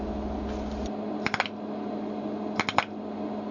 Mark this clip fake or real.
real